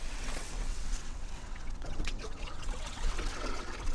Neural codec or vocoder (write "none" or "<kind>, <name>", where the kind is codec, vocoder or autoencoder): vocoder, WaveNeXt